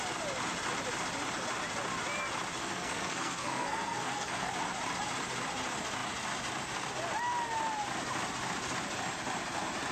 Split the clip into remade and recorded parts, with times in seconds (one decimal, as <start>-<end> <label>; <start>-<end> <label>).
0.0-2.6 recorded; 2.6-4.5 remade; 4.5-9.9 recorded